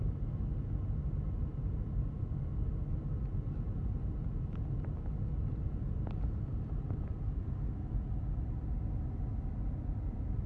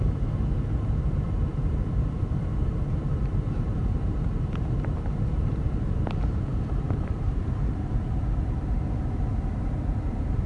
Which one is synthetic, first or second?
second